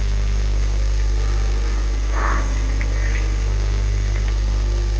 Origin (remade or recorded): remade